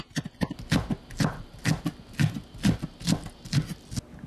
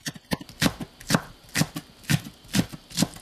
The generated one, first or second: second